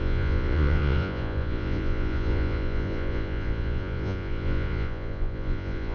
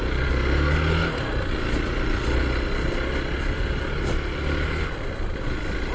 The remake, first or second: first